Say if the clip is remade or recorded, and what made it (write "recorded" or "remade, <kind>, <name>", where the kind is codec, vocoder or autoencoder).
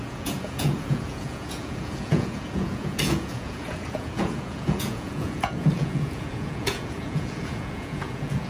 remade, vocoder, Vocos